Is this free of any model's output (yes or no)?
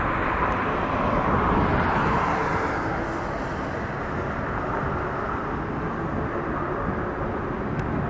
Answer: yes